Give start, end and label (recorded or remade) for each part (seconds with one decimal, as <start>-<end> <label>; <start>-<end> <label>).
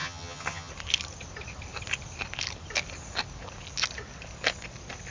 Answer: 0.0-0.7 remade; 0.7-5.1 recorded